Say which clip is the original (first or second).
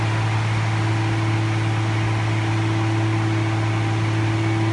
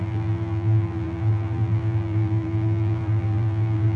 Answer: first